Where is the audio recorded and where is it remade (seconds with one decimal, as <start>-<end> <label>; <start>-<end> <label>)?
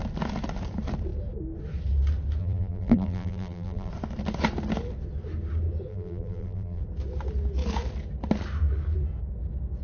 0.0-2.4 recorded; 2.4-3.9 remade; 3.9-5.9 recorded; 5.9-6.8 remade; 6.8-9.8 recorded